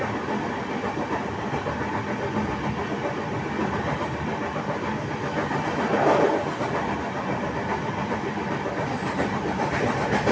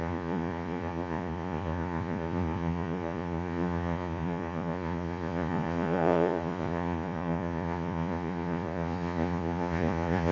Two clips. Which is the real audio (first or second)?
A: first